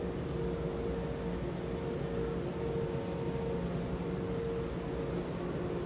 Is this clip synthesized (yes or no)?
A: no